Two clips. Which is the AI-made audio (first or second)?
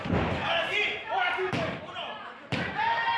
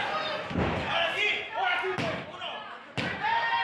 first